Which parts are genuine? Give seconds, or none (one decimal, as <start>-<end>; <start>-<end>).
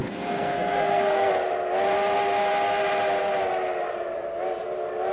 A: 1.3-5.1